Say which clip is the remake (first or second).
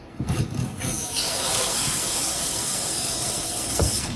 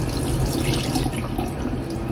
first